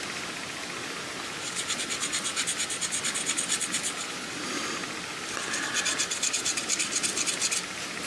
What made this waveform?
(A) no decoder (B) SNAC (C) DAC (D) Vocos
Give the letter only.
A